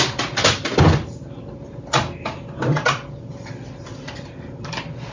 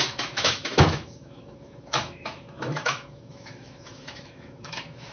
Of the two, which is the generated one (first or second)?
second